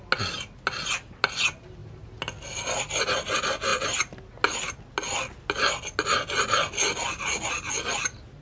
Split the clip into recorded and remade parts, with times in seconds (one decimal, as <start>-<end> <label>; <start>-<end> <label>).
0.0-8.4 recorded